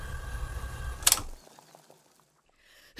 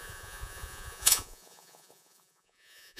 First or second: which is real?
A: first